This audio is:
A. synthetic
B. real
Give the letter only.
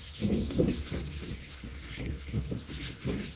A